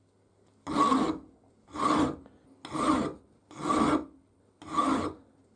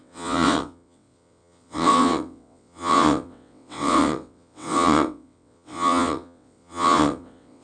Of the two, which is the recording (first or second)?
first